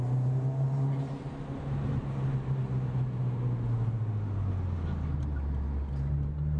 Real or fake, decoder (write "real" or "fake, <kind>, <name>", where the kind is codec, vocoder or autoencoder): real